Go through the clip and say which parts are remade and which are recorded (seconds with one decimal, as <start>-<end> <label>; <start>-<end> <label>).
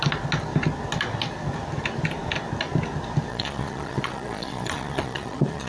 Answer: 0.0-3.3 recorded; 3.3-5.7 remade